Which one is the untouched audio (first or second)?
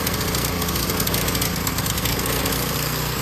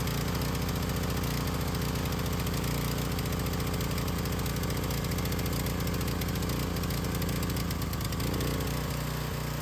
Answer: second